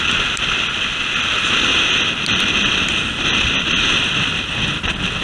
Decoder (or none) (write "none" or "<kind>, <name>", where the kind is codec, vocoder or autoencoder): none